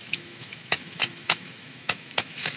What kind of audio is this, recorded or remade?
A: remade